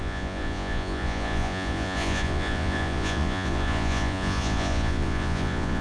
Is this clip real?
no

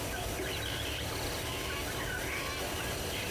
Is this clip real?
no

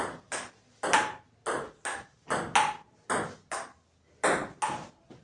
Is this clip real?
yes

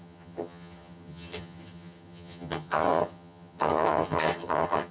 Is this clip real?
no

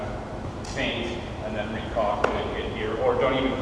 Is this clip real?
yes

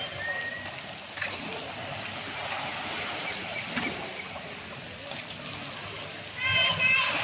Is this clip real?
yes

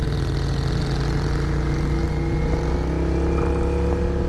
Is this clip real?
yes